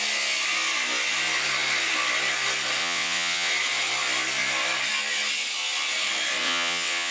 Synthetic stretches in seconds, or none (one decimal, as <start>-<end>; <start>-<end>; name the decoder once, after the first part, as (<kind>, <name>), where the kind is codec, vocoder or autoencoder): 2.8-3.5 (vocoder, WaveNeXt); 6.4-7.1